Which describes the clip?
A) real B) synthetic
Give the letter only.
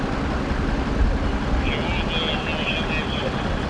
A